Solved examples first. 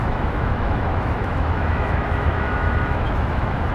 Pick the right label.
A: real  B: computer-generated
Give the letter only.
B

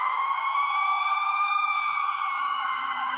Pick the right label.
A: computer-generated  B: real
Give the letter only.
A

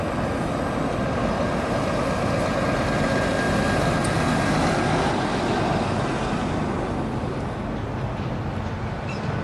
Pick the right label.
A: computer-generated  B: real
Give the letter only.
B